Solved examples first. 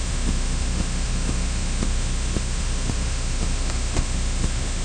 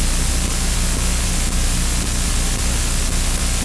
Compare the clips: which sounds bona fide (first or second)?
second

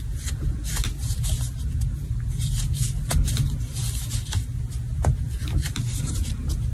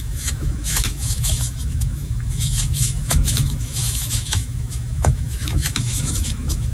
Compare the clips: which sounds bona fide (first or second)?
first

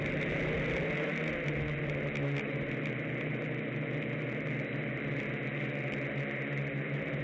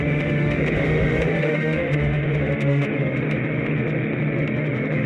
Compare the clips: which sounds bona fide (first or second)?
first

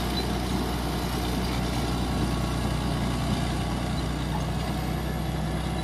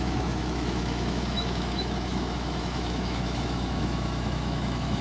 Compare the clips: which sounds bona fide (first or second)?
first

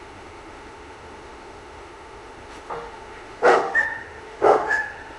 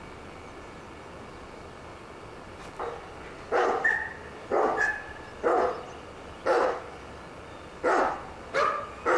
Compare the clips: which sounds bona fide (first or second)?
second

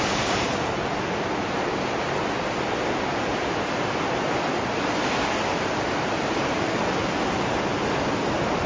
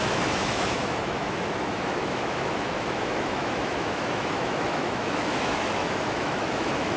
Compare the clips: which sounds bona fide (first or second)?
first